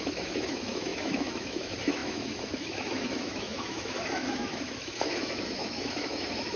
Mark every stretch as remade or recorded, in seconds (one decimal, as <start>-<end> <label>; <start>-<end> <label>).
0.0-6.6 remade